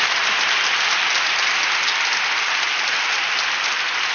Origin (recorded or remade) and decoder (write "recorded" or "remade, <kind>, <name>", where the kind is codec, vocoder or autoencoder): recorded